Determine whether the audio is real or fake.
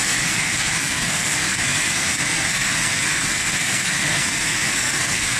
fake